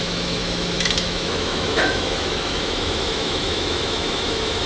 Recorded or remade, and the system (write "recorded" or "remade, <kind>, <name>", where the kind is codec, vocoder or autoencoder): remade, autoencoder, DAC-VAE